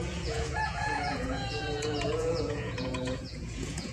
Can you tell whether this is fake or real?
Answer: fake